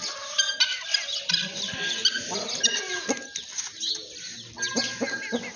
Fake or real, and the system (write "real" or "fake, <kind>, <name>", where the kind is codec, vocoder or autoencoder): real